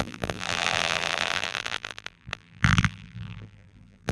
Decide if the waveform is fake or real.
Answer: fake